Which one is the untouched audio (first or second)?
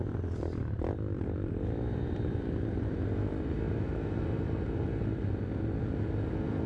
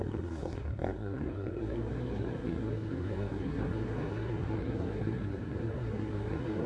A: first